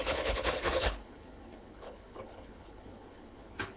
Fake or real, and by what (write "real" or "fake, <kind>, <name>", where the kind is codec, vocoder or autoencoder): fake, codec, HILCodec